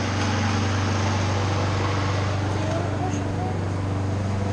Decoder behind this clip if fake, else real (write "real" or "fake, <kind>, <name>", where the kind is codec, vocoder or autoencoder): real